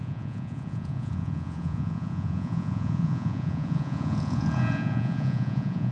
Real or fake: fake